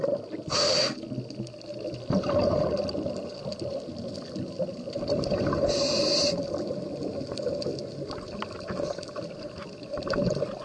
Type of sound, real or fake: real